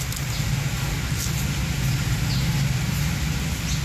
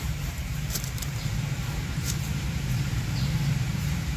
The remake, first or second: second